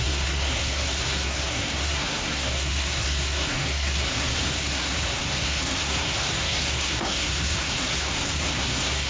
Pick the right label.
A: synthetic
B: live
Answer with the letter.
A